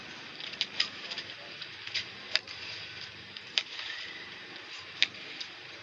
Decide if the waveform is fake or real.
fake